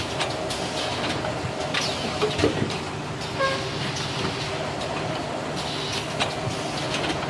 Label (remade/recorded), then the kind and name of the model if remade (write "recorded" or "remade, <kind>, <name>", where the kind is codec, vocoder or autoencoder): recorded